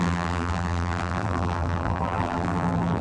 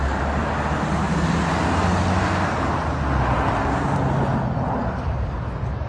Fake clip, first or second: first